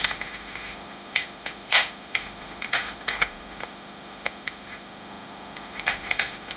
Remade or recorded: remade